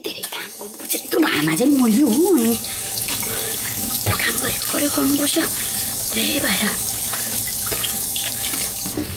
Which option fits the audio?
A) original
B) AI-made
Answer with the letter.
B